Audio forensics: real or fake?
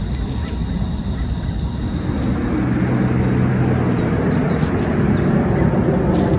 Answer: real